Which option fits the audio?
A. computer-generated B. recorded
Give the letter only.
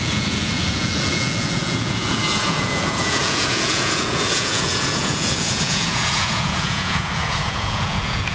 A